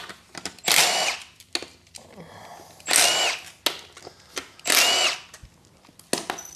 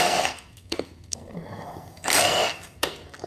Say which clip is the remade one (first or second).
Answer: second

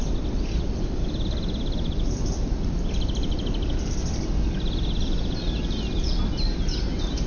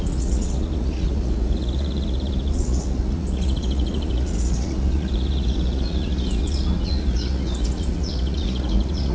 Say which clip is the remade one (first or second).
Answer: second